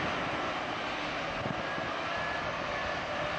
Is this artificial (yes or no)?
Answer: no